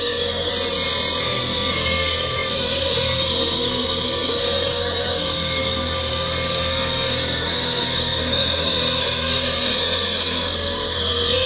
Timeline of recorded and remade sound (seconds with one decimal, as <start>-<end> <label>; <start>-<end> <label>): 0.0-0.5 remade; 0.5-1.2 recorded; 1.2-11.5 remade